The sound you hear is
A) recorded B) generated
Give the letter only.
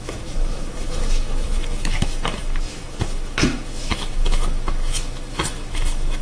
B